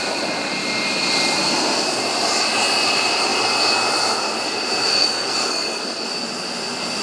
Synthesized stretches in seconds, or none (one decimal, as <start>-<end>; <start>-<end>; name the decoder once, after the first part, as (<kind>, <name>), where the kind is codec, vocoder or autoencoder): 4.9-6.1 (codec, SNAC)